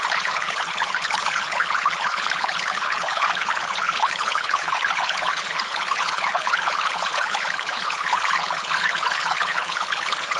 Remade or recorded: remade